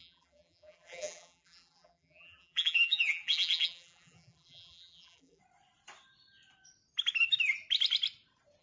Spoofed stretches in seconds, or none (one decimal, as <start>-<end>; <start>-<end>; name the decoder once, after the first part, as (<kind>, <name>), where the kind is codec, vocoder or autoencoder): 0.0-5.4 (vocoder, BigVGAN v2)

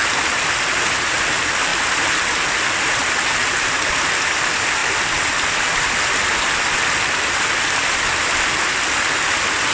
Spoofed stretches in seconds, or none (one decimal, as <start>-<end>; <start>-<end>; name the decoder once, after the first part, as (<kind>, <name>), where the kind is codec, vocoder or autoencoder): none